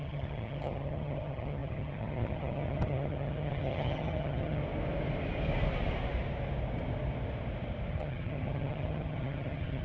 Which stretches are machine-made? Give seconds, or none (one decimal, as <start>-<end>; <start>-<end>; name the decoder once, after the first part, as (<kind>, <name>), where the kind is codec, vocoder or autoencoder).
0.0-4.6 (vocoder, HiFi-GAN); 7.9-9.8